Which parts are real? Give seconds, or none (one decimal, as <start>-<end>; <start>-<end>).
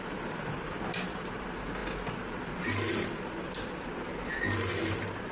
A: 0.0-5.3